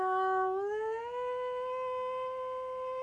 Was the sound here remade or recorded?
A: recorded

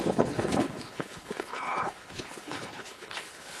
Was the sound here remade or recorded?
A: remade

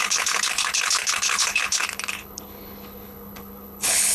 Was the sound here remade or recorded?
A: remade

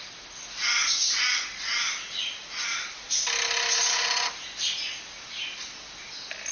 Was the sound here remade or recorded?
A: recorded